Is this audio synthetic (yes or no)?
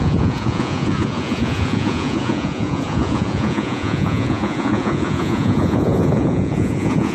yes